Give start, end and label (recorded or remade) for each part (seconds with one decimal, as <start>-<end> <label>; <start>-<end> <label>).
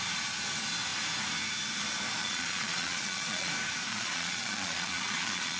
0.0-2.2 recorded; 2.2-3.5 remade; 3.5-3.9 recorded; 3.9-5.6 remade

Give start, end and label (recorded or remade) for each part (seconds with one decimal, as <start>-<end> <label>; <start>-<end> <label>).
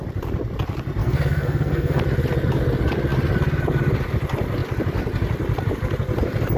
0.0-1.0 recorded; 1.0-2.0 remade; 2.0-6.6 recorded